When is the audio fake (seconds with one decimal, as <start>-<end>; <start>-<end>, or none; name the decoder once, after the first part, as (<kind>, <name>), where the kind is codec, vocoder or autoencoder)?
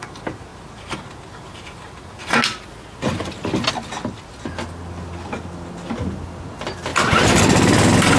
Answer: none